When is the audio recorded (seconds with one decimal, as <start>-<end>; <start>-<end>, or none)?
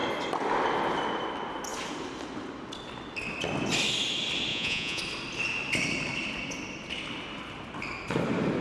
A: 0.0-4.5; 5.0-8.6